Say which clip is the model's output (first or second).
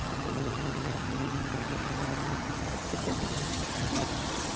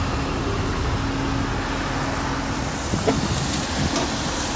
first